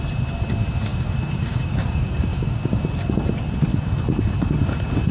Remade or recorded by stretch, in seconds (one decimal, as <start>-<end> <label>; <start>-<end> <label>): 0.0-0.9 recorded; 0.9-2.8 remade; 2.8-5.1 recorded